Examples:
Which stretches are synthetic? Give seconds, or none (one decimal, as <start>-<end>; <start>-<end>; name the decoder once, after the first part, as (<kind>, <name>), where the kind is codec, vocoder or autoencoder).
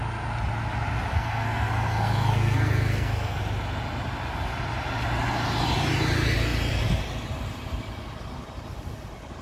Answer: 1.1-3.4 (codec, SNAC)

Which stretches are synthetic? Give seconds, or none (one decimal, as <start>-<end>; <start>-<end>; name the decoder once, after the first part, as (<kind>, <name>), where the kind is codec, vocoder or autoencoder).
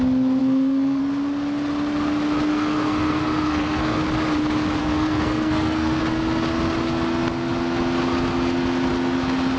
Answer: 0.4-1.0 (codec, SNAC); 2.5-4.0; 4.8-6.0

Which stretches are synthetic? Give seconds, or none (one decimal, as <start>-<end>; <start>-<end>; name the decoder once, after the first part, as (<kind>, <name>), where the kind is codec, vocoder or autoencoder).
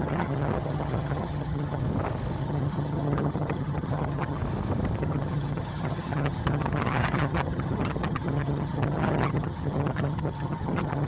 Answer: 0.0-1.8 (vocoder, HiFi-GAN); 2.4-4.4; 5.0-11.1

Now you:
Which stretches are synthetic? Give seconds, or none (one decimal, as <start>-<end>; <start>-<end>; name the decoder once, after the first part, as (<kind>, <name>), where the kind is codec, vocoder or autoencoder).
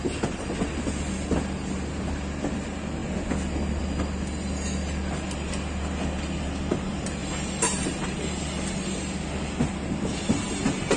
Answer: none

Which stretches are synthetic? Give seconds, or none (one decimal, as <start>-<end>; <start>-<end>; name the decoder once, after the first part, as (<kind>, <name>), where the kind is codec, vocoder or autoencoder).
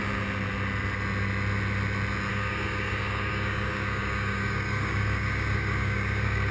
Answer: 2.3-6.5 (codec, DAC)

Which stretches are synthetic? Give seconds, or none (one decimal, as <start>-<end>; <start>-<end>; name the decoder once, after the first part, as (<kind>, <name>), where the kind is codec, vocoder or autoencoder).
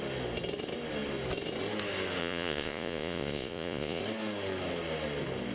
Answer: 2.2-4.0 (vocoder, Vocos)